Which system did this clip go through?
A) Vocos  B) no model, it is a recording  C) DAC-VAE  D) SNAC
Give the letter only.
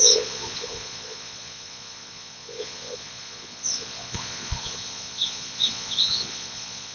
A